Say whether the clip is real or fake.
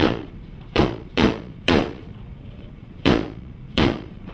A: fake